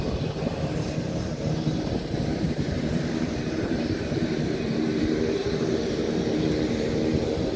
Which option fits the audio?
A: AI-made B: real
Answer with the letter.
A